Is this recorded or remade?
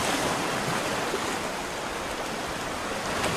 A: recorded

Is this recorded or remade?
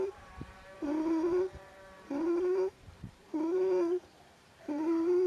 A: remade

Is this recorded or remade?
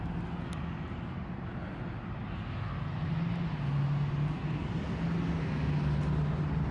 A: recorded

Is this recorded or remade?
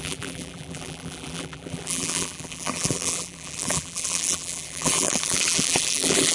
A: remade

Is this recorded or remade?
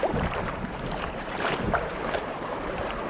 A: remade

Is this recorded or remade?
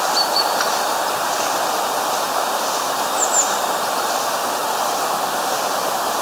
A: remade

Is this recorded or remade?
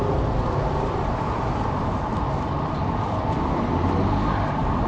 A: recorded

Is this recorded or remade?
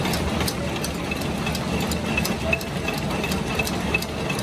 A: recorded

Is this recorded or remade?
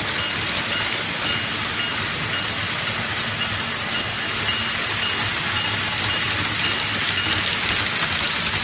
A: recorded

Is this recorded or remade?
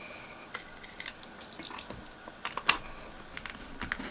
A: recorded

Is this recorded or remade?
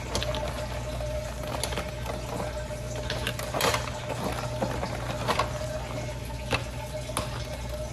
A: recorded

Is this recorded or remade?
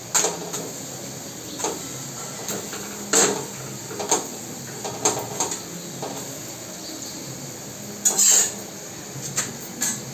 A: recorded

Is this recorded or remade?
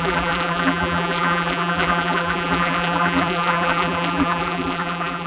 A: remade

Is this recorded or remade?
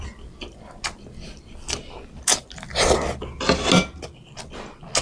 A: recorded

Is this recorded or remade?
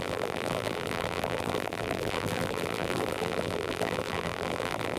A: remade